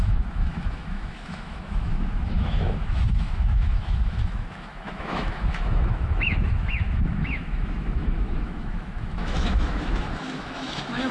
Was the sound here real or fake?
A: fake